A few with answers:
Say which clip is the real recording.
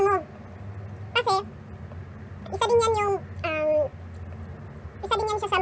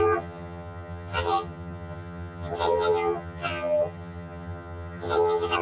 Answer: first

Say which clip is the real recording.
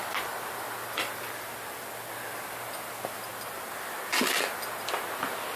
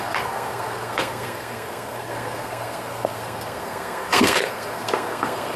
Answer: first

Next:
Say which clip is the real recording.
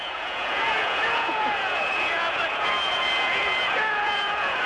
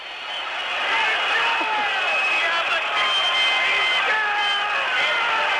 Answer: second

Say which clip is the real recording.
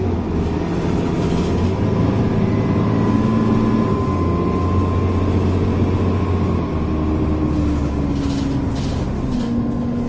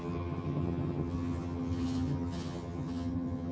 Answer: first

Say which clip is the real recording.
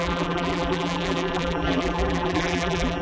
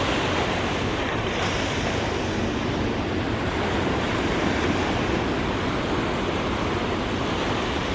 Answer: second